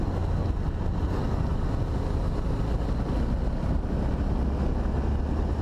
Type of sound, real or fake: real